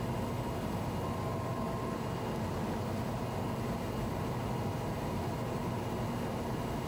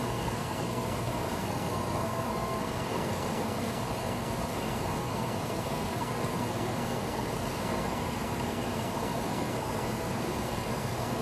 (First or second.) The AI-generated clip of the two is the second